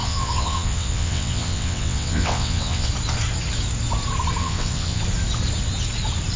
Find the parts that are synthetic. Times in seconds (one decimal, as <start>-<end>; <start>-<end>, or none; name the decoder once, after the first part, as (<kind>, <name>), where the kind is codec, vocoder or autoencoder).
0.0-2.9 (vocoder, WaveNeXt); 4.4-5.0